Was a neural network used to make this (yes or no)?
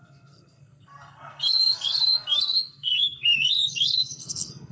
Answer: yes